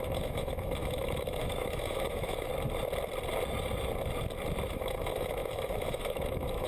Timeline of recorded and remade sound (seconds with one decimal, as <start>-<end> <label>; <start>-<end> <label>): 0.0-2.5 remade; 2.5-4.7 recorded; 4.7-6.7 remade